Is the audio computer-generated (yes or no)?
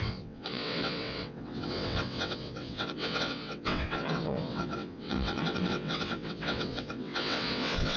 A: yes